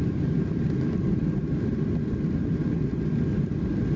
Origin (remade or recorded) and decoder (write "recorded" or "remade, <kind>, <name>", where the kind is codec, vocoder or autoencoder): recorded